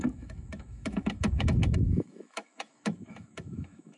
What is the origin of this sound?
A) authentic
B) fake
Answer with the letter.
B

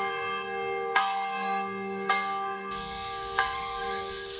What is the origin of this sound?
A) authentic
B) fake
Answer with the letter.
B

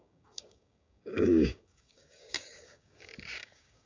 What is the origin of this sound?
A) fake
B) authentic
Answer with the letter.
A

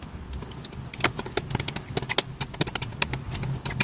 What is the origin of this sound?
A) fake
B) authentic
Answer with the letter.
B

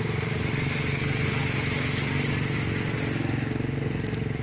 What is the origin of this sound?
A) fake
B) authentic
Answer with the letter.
B